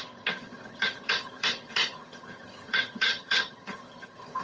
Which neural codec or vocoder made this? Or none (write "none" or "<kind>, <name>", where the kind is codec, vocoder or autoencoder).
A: vocoder, HiFi-GAN